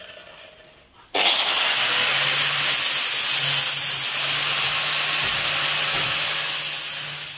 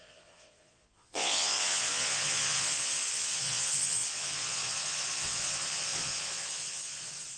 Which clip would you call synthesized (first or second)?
second